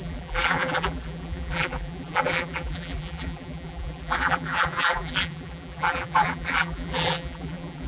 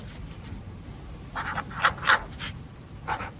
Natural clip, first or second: second